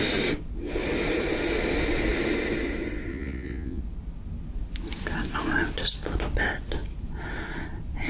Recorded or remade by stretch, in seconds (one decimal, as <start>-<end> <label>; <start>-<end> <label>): 0.0-3.1 recorded; 3.1-3.8 remade; 3.8-8.1 recorded